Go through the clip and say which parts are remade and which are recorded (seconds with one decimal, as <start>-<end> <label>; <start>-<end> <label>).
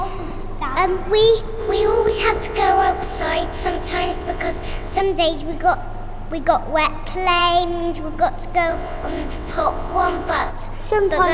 0.0-1.6 recorded; 1.6-5.0 remade; 5.0-8.7 recorded; 8.7-10.5 remade; 10.5-11.3 recorded